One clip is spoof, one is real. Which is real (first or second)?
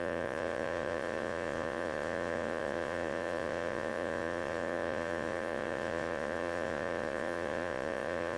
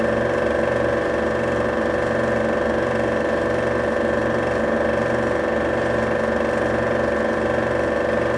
second